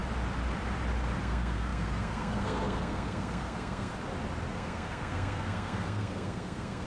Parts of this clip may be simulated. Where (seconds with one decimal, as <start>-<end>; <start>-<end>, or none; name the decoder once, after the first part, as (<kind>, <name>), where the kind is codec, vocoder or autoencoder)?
1.2-3.9 (codec, SNAC); 4.5-6.9